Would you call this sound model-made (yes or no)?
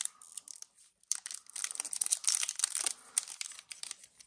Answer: no